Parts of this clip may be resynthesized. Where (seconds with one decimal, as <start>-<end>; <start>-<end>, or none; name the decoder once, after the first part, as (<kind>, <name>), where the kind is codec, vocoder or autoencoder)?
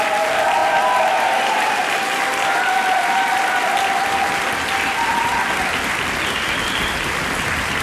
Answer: none